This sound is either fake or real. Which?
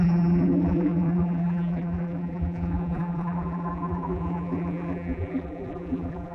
fake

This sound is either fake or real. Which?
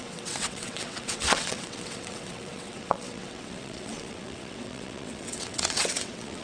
fake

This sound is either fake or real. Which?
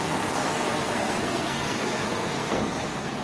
fake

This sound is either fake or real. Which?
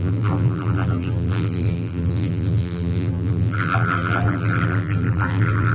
fake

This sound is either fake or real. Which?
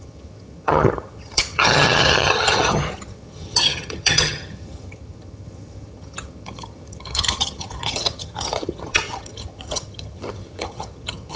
fake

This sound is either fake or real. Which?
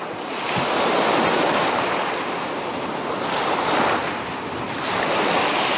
real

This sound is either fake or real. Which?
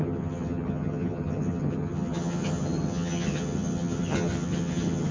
fake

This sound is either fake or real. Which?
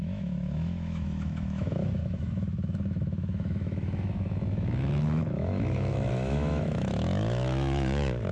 fake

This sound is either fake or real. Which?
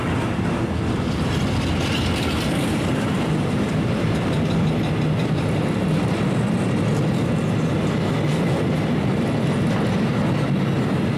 real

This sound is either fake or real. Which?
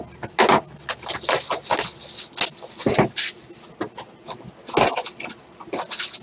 real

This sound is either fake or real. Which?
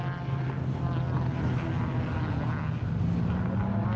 real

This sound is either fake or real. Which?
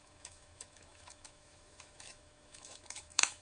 fake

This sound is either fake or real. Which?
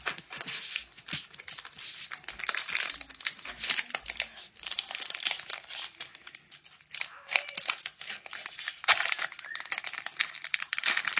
real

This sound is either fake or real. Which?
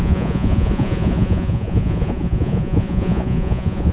fake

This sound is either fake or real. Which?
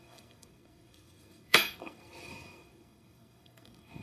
fake